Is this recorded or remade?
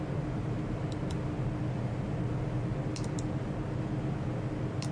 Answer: recorded